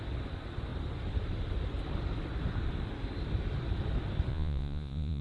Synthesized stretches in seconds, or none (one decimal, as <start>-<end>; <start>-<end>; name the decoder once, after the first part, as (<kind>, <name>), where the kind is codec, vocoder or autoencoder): 4.3-5.2 (vocoder, Vocos)